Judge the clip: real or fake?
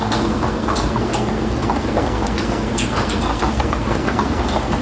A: fake